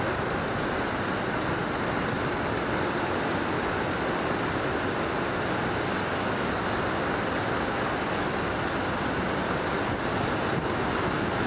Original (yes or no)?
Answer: yes